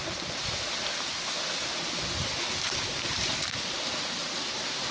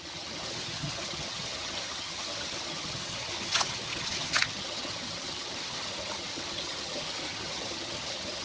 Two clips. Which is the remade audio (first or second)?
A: second